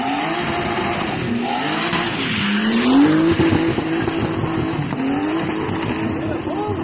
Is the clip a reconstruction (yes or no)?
no